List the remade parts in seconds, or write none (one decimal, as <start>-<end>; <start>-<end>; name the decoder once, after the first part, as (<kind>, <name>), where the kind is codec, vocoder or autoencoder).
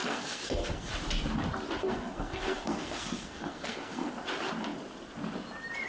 0.0-0.9 (codec, SNAC); 1.8-4.1